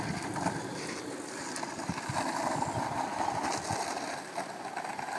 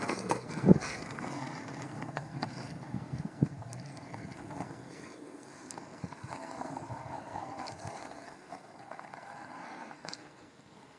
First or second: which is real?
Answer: first